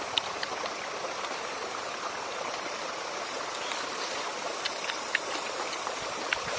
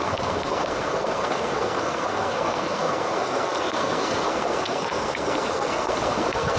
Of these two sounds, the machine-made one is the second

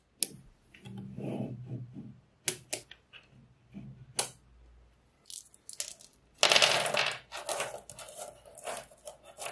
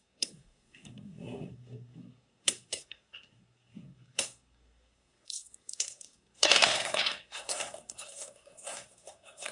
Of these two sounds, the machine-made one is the second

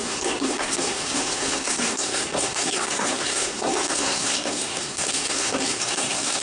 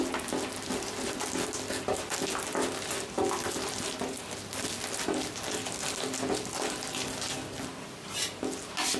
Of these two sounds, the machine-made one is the first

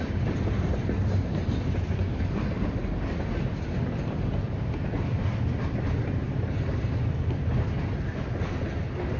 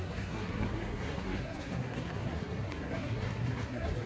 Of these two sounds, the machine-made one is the second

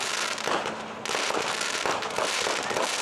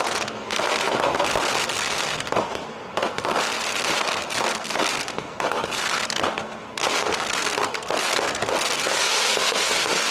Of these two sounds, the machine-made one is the second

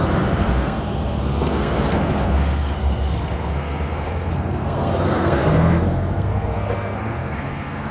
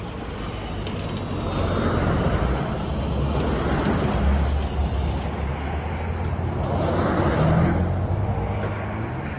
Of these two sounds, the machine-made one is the first